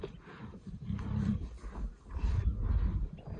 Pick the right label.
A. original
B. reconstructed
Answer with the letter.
A